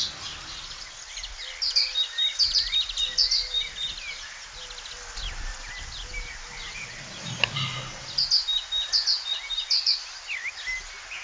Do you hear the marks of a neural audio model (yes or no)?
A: no